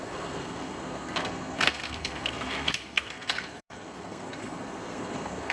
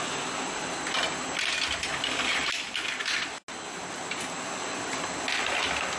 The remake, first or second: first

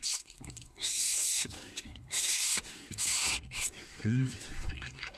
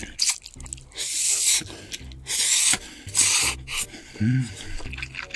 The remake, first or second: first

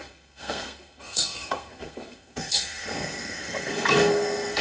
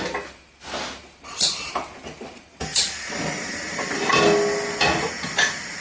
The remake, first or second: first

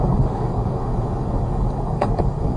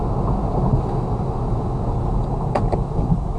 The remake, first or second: first